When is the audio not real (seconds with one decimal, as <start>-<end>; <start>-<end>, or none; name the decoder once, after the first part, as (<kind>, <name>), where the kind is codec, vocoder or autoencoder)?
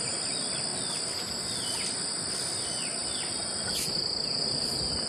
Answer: none